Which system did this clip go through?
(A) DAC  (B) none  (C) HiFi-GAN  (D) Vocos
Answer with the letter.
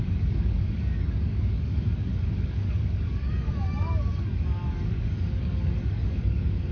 A